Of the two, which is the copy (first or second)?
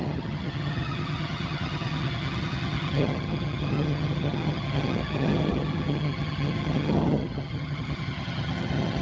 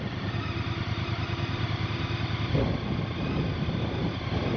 first